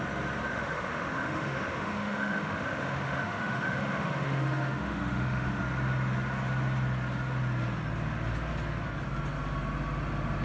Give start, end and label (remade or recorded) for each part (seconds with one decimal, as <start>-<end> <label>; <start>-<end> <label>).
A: 0.0-0.5 recorded; 0.5-5.6 remade; 5.6-10.4 recorded